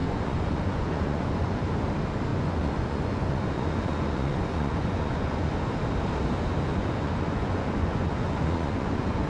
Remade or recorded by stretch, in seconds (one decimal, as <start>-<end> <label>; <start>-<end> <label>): 0.0-1.6 remade; 1.6-2.3 recorded; 2.3-5.5 remade; 5.5-6.7 recorded; 6.7-9.3 remade